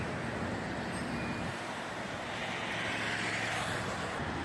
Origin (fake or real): real